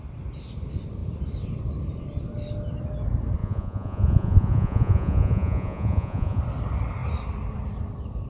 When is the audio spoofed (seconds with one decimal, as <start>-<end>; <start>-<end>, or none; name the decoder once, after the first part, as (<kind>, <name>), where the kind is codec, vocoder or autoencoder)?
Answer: 3.4-6.4 (vocoder, Vocos)